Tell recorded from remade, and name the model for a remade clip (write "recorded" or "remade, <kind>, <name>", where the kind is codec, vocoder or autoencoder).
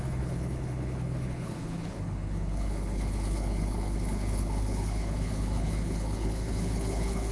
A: remade, codec, HILCodec